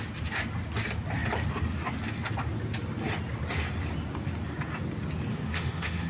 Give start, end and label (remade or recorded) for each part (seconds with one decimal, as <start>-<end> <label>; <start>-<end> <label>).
0.0-5.3 recorded; 5.3-6.1 remade